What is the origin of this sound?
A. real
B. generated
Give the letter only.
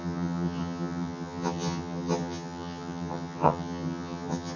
B